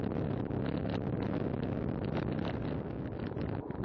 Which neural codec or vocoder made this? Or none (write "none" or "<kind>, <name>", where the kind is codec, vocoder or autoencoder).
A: none